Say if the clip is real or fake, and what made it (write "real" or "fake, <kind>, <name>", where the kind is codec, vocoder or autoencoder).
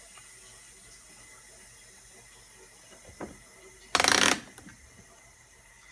real